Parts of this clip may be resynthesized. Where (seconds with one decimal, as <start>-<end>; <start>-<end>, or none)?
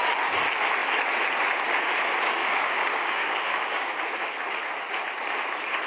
2.4-4.3